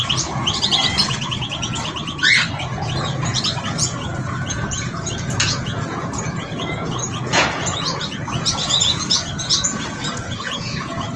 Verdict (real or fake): fake